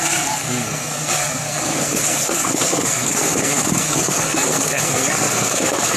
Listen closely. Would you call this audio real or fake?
fake